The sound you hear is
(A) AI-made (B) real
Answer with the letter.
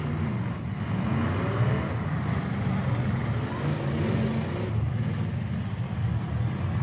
B